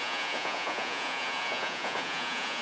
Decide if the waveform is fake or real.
fake